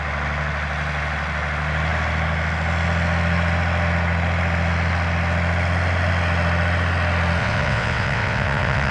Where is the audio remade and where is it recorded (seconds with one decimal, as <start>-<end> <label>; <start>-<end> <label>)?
0.0-7.4 recorded; 7.4-8.9 remade